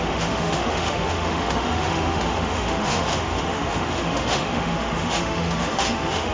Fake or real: fake